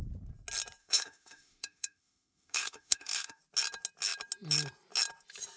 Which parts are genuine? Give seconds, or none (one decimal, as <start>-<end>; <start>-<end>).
0.0-0.8; 3.4-5.6